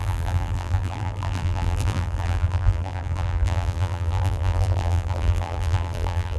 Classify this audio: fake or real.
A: fake